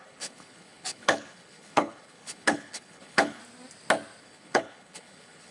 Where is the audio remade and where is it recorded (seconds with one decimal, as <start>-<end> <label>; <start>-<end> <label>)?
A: 0.0-3.4 remade; 3.4-4.2 recorded; 4.2-5.5 remade